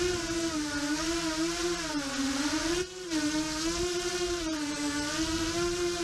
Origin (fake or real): real